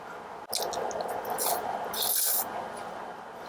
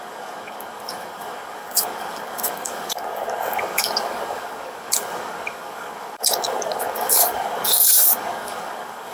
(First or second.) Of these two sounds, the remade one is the second